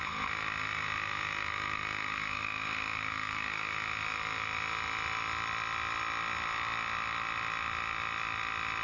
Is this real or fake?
real